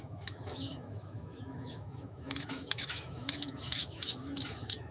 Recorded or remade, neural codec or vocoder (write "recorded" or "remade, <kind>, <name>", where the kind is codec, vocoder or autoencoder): remade, autoencoder, DAC-VAE